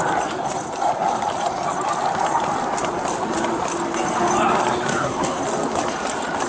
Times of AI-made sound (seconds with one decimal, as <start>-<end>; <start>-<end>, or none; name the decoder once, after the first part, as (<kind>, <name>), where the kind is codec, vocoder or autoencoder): 4.9-5.4 (codec, SNAC)